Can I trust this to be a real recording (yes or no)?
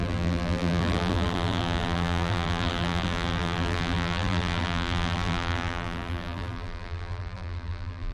no